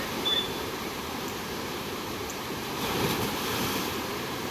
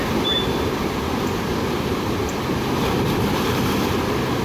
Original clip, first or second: second